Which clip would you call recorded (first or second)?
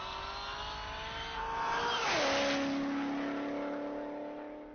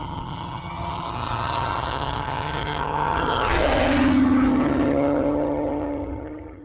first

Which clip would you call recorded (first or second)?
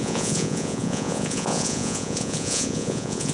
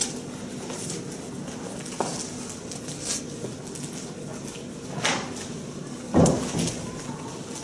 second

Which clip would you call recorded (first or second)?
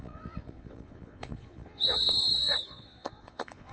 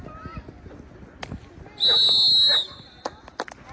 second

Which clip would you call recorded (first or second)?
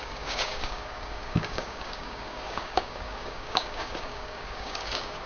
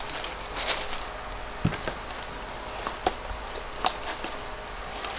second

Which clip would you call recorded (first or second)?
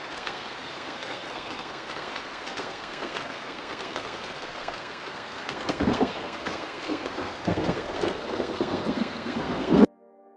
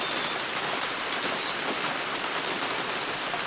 second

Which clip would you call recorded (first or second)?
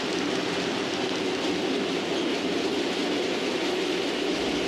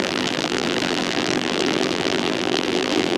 first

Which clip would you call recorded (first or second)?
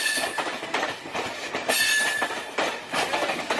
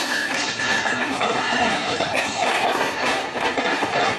first